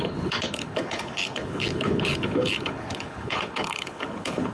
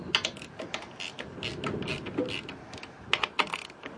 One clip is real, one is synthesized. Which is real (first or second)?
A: second